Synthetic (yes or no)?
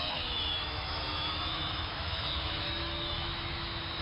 yes